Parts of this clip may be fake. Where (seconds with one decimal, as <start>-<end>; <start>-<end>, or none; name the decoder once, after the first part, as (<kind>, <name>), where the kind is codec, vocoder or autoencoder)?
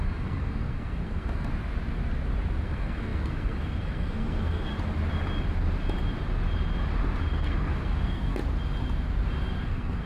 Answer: 0.0-1.5 (codec, SNAC); 2.6-4.7; 7.3-8.4; 9.6-10.1